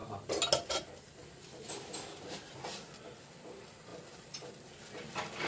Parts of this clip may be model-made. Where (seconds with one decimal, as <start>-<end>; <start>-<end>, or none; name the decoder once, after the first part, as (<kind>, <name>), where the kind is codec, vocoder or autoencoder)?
none